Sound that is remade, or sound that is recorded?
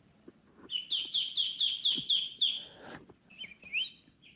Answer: recorded